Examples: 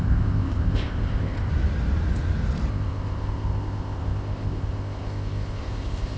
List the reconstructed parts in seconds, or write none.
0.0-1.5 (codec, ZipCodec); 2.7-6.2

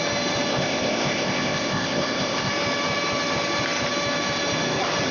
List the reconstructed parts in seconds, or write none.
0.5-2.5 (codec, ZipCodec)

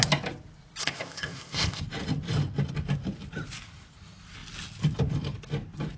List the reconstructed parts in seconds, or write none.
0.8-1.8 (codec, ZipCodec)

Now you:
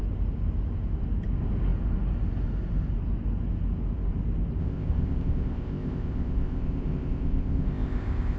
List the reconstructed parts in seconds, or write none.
4.6-8.4 (codec, ZipCodec)

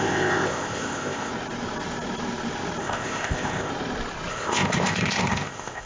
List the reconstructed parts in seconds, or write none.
0.0-1.3 (codec, ZipCodec); 2.8-3.7; 4.3-5.9

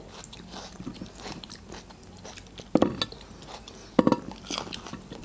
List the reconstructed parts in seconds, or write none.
none